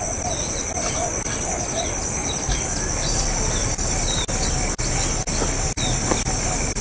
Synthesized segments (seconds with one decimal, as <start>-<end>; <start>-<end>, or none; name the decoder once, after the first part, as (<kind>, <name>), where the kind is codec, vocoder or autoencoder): none